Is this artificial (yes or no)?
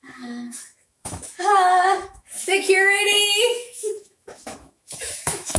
yes